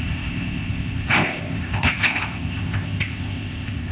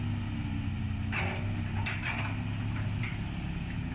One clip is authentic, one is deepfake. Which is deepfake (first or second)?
first